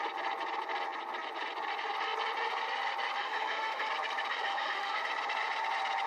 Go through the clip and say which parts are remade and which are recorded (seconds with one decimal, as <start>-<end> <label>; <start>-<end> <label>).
0.0-3.2 recorded; 3.2-3.9 remade; 3.9-4.3 recorded; 4.3-5.0 remade; 5.0-6.1 recorded